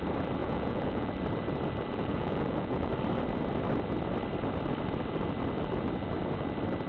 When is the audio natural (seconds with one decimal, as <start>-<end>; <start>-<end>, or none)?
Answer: 0.0-0.4; 1.1-2.0; 2.9-6.9